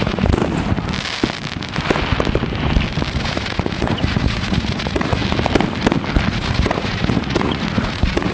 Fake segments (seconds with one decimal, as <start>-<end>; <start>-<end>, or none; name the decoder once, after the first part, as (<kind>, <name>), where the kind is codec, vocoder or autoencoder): 0.0-0.4 (vocoder, Vocos); 3.1-5.2; 6.3-8.3